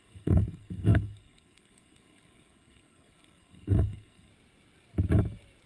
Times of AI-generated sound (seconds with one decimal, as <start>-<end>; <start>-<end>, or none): 0.0-4.3